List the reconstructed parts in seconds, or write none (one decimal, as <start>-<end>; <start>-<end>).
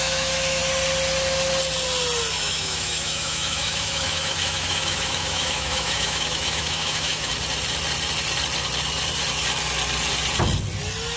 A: 0.0-0.6; 2.4-7.3